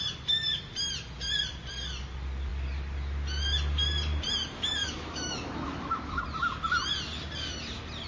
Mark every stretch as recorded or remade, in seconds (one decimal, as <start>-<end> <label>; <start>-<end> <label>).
0.0-4.8 recorded; 4.8-6.2 remade; 6.2-8.1 recorded